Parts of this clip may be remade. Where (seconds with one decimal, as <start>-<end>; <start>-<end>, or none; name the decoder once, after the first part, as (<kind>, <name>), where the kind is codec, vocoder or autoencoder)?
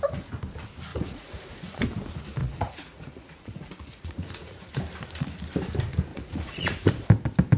0.9-1.8 (vocoder, Vocos); 2.4-4.8; 6.1-6.9